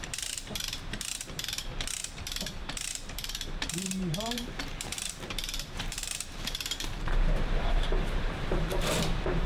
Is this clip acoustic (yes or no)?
no